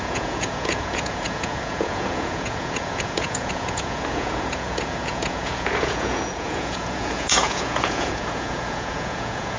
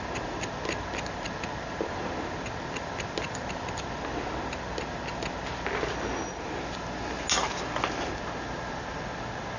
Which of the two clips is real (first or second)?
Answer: second